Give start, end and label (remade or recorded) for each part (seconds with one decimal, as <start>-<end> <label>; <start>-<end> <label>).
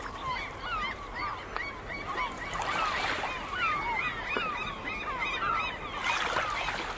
0.0-7.0 recorded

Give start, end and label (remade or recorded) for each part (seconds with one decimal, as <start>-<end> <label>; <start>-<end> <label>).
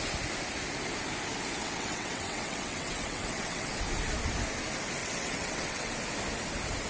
0.0-1.6 recorded; 1.6-3.7 remade; 3.7-5.0 recorded; 5.0-5.9 remade; 5.9-6.9 recorded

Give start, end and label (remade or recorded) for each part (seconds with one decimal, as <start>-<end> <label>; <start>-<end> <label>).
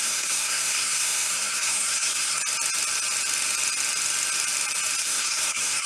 0.0-2.4 remade; 2.4-5.0 recorded; 5.0-5.9 remade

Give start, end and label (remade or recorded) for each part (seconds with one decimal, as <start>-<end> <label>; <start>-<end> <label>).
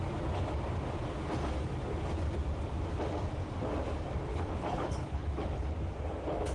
0.0-4.3 recorded; 4.3-5.8 remade; 5.8-6.5 recorded